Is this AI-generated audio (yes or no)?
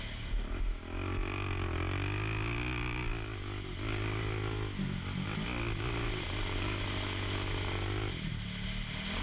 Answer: no